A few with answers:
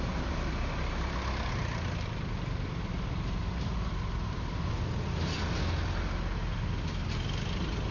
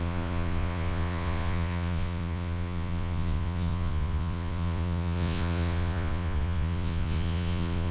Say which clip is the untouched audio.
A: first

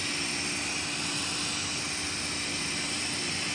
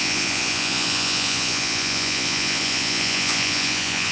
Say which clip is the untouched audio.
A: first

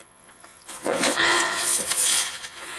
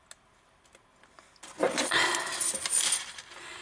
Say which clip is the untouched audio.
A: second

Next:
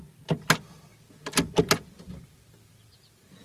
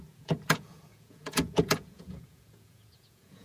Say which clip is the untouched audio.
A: first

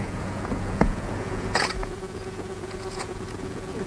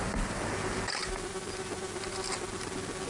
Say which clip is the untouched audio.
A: second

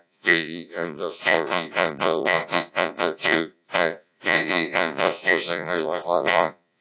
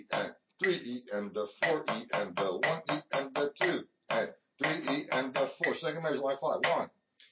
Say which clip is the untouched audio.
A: second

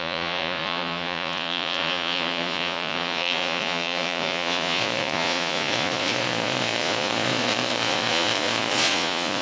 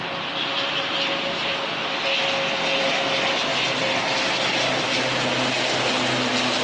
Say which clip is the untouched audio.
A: second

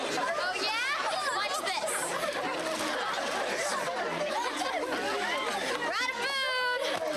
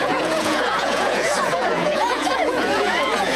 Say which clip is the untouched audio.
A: first